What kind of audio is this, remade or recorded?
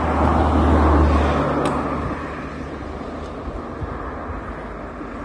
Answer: recorded